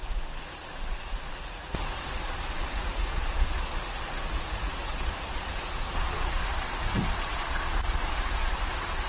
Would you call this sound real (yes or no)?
no